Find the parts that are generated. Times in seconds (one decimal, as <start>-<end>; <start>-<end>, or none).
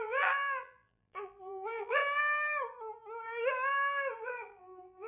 0.0-2.0; 4.2-5.1